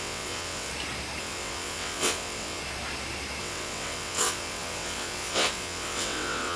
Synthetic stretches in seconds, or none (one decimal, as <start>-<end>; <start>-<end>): 0.0-0.7; 1.2-2.6; 3.4-6.6